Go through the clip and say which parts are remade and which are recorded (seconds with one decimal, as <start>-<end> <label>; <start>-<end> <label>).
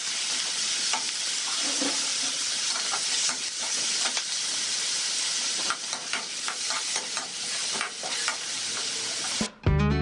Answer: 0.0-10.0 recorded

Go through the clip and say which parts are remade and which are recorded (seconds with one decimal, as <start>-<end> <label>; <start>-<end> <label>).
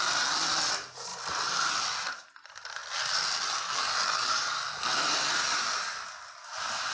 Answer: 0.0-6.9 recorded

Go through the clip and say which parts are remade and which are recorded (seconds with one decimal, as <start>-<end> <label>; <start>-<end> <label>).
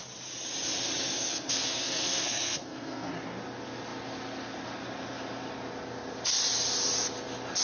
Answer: 0.0-1.3 recorded; 1.3-3.1 remade; 3.1-7.6 recorded